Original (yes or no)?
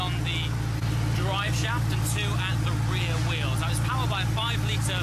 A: yes